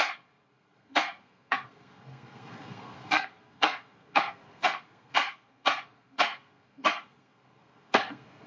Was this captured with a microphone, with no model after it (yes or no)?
no